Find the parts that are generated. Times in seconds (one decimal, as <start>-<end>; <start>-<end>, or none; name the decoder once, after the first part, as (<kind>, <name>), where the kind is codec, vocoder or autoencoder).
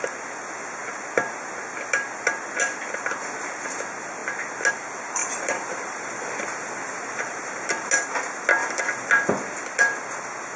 5.2-7.9 (vocoder, BigVGAN v2); 8.6-9.3